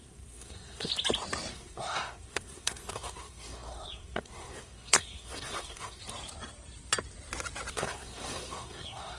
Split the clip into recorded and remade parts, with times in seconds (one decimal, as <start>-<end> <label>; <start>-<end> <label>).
0.0-0.9 remade; 0.9-1.5 recorded; 1.5-6.0 remade; 6.0-7.7 recorded; 7.7-9.2 remade